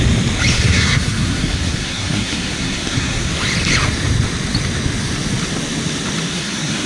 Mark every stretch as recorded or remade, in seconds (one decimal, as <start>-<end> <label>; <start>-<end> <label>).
0.0-0.5 recorded; 0.5-3.3 remade; 3.3-6.3 recorded; 6.3-6.9 remade

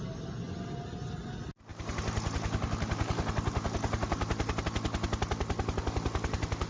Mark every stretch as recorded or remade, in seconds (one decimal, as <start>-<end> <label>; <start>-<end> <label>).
0.0-1.7 recorded; 1.7-4.6 remade; 4.6-6.7 recorded